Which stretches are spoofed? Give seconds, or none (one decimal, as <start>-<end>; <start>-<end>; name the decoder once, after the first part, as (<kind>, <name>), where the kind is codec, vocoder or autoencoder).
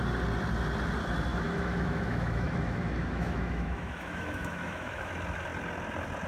1.3-5.1 (autoencoder, DAC-VAE)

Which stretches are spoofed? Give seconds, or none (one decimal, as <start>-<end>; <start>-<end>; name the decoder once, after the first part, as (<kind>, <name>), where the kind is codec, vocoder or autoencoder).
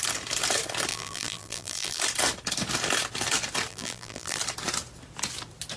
0.9-2.0 (vocoder, BigVGAN v2); 3.7-4.4